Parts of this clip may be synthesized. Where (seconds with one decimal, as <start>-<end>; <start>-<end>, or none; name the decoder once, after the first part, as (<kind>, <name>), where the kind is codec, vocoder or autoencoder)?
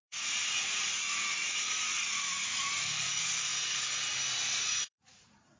0.0-3.5 (vocoder, Vocos); 4.5-5.6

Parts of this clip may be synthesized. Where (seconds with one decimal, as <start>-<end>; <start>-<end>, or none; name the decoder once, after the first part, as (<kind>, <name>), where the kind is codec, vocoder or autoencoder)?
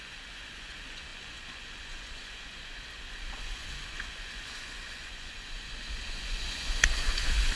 0.0-7.6 (vocoder, Vocos)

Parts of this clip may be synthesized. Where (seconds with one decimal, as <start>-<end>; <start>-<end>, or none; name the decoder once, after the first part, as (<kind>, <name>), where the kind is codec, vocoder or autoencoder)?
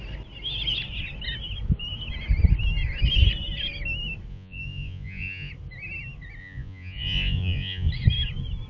4.3-5.5 (vocoder, Vocos); 6.4-7.9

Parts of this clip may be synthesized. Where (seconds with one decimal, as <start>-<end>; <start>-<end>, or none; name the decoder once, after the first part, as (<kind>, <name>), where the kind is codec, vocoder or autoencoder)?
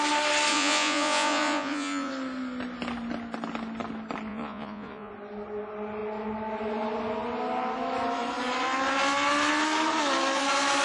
0.5-2.1 (vocoder, Vocos); 4.3-5.1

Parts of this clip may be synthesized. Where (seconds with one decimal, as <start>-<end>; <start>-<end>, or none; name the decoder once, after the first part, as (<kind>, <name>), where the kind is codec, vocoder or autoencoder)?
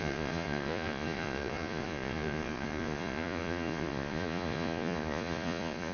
0.0-5.9 (vocoder, Vocos)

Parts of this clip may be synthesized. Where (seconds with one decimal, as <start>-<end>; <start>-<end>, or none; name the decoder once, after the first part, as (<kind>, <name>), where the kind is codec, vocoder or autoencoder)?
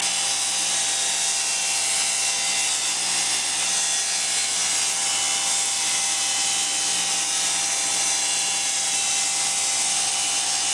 none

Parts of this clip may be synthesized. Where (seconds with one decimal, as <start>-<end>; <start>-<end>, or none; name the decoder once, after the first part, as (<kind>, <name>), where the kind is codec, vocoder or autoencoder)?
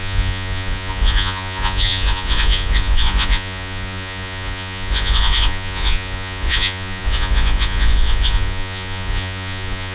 0.0-9.9 (vocoder, Vocos)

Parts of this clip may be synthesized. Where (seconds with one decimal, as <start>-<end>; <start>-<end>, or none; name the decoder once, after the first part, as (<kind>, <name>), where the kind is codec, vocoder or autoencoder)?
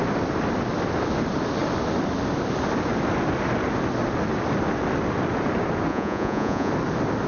5.9-6.7 (vocoder, Vocos)